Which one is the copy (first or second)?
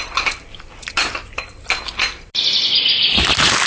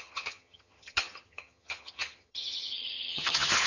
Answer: second